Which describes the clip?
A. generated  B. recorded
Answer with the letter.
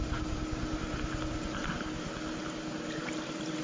B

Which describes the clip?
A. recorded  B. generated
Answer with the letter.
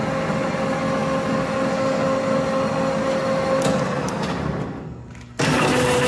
A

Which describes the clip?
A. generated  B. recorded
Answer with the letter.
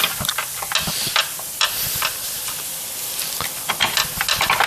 B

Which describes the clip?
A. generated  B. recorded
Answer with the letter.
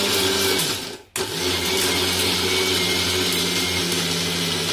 B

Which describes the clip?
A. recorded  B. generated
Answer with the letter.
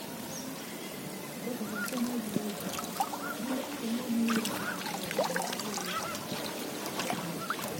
B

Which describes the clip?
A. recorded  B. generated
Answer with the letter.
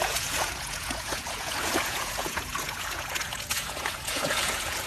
B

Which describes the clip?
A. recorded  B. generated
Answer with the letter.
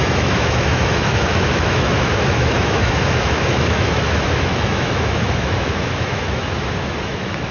B